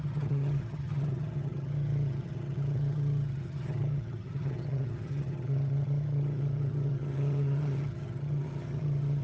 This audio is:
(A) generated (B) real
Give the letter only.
A